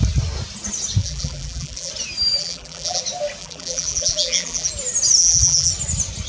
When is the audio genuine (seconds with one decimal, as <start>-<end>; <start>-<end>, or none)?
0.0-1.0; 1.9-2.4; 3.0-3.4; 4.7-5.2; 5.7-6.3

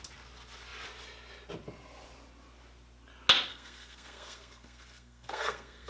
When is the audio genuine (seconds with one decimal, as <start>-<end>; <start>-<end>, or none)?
0.0-3.5

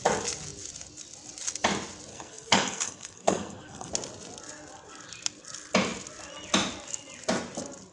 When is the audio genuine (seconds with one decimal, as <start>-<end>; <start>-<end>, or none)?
0.0-2.1; 3.9-7.9